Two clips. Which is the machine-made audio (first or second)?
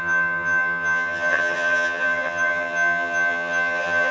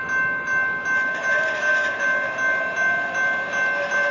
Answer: first